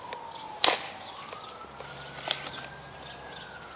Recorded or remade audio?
recorded